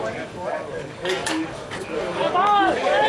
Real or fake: fake